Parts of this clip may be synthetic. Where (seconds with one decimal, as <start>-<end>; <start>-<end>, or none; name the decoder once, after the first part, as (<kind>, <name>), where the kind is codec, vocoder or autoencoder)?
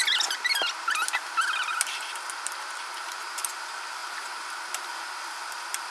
none